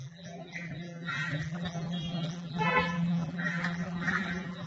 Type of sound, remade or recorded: remade